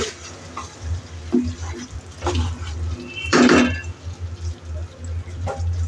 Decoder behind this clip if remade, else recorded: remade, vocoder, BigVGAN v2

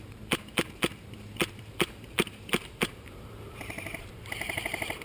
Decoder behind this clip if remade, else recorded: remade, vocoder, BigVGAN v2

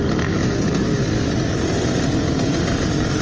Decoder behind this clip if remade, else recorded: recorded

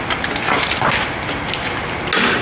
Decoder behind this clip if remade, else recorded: recorded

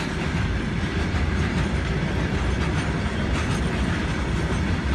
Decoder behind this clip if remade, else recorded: recorded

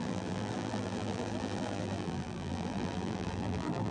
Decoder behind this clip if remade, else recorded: remade, vocoder, BigVGAN v2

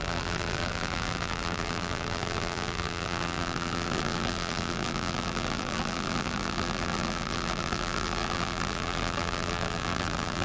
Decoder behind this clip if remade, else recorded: remade, vocoder, BigVGAN v2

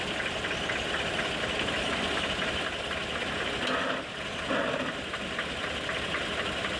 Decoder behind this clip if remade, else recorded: recorded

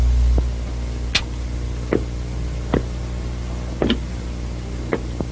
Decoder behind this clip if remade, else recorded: recorded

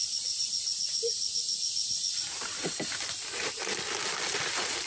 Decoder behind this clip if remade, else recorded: remade, vocoder, BigVGAN v2